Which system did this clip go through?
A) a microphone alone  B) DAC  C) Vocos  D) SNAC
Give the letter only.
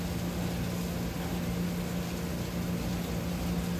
A